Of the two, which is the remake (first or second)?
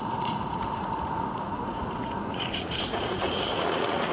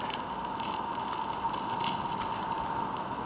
first